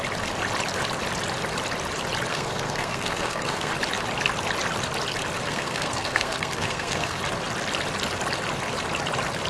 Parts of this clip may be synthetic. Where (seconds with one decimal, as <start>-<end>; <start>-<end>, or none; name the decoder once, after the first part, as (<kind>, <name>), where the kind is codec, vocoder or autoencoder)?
2.3-3.7 (codec, SNAC); 5.5-7.2